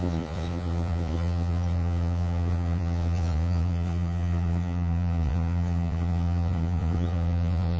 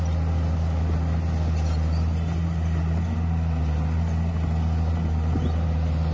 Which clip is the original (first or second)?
second